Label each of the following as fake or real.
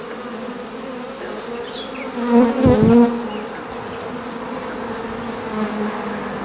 real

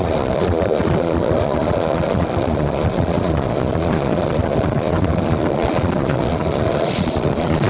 fake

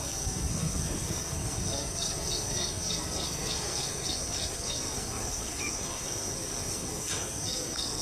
fake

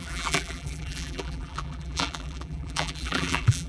fake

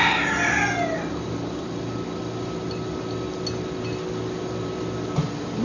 real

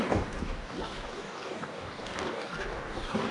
fake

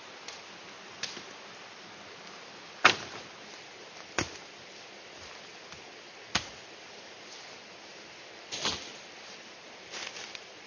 real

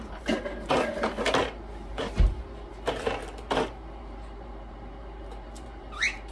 fake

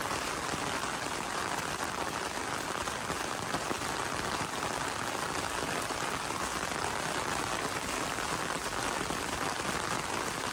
real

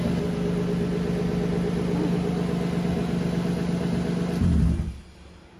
real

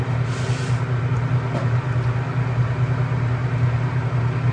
real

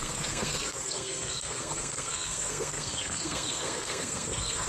fake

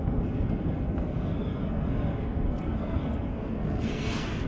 fake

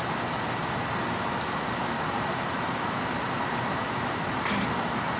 fake